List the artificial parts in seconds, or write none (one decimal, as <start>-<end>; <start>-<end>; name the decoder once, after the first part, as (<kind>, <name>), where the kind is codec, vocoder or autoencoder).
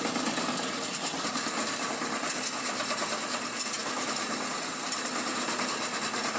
0.0-3.8 (vocoder, BigVGAN v2); 4.7-6.4